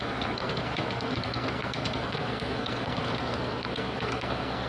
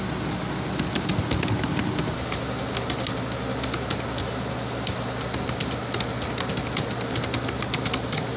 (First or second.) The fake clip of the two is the first